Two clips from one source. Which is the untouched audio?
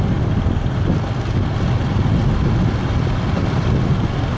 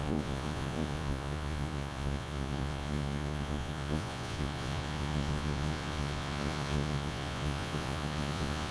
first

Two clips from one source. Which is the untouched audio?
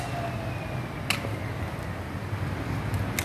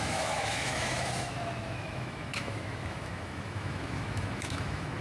first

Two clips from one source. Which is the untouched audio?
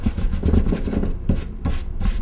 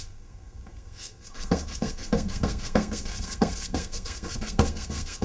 first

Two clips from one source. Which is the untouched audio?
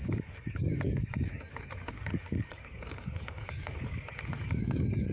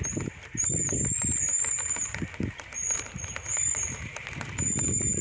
second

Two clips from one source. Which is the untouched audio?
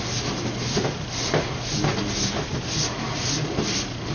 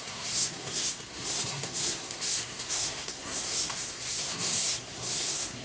first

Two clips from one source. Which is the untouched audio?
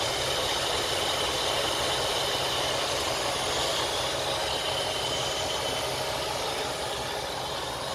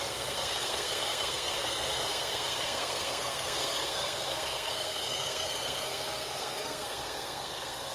first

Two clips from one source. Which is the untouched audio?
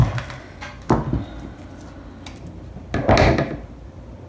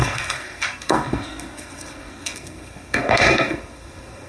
first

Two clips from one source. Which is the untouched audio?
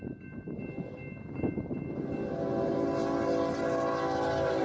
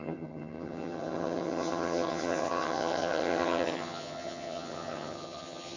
first